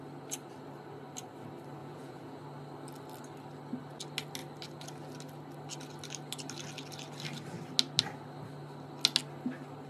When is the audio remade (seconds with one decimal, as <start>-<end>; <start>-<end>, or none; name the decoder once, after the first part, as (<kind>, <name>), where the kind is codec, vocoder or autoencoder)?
1.8-2.4 (vocoder, Vocos)